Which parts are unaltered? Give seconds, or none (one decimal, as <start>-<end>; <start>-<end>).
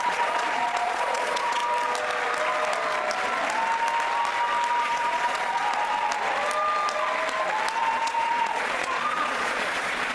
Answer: 1.6-4.8; 5.6-7.8